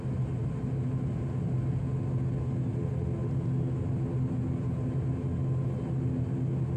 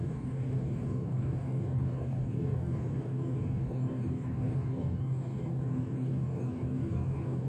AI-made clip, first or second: second